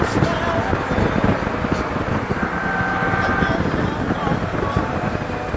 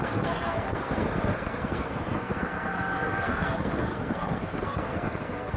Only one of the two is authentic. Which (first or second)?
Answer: first